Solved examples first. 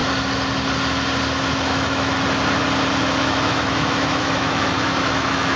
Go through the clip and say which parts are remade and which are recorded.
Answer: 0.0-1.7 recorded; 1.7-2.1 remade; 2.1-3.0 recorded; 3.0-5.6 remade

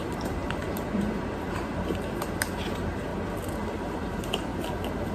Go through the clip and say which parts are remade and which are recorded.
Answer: 0.0-3.1 remade; 3.1-3.9 recorded; 3.9-4.5 remade; 4.5-5.1 recorded

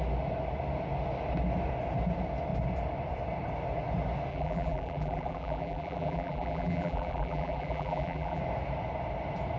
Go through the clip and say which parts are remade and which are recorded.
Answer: 0.0-4.3 recorded; 4.3-8.4 remade; 8.4-9.6 recorded

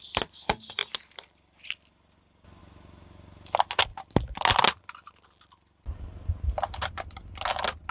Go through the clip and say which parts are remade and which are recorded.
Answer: 0.0-7.9 recorded